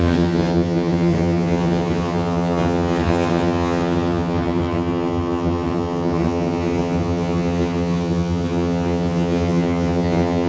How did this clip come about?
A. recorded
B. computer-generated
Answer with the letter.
B